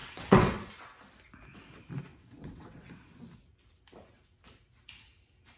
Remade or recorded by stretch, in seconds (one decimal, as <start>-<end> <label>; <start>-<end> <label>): 0.0-0.7 remade; 0.7-2.1 recorded; 2.1-2.9 remade; 2.9-5.6 recorded